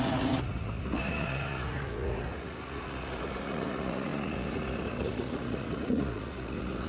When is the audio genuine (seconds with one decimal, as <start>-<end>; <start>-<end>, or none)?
none